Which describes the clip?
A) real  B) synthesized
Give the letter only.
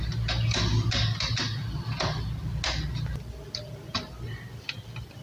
A